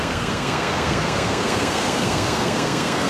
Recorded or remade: remade